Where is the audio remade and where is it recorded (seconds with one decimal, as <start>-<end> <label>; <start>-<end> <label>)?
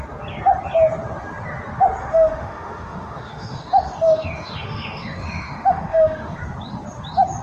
0.0-2.0 recorded; 2.0-6.4 remade; 6.4-7.4 recorded